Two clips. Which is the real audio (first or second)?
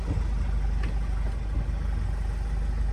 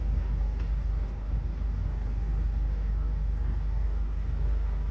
first